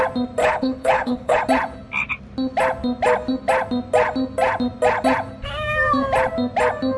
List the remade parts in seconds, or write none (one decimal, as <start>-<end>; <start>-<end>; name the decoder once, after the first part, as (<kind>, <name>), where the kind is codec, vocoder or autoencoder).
0.4-1.4 (codec, HILCodec)